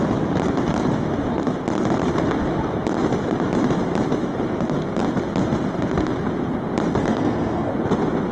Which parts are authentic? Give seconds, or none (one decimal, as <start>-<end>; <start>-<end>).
0.0-7.0; 7.7-8.3